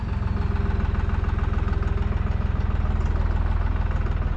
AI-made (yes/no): no